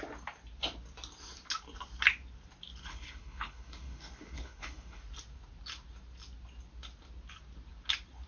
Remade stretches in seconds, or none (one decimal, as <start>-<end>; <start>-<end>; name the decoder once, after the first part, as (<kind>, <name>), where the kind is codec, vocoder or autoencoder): 2.8-5.0 (codec, HILCodec)